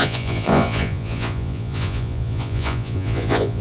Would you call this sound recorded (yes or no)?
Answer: no